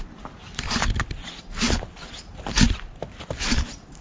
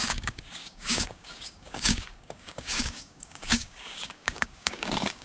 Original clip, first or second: first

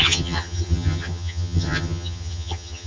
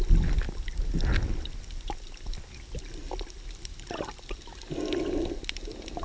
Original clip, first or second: second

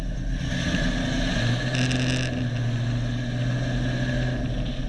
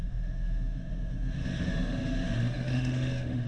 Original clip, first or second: first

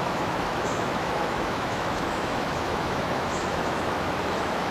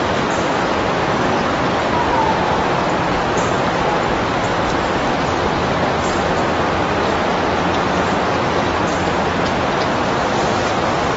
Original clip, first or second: second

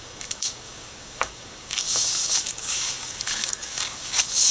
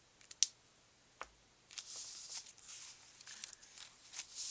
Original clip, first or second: second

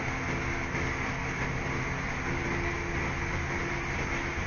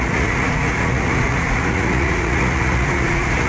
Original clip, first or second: first